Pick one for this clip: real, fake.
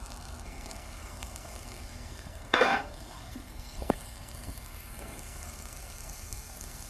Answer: fake